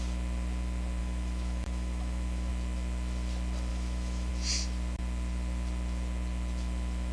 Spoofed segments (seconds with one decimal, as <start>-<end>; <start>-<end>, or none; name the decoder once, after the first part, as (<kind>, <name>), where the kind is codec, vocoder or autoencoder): 1.0-2.5 (autoencoder, DAC-VAE); 3.7-4.3